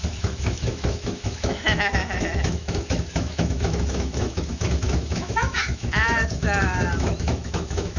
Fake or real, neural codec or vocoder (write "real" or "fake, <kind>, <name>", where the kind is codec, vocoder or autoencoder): fake, autoencoder, DAC-VAE